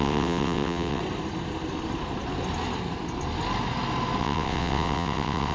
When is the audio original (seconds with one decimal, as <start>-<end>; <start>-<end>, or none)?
1.0-4.2